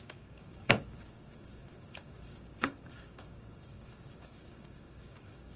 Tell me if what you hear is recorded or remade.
remade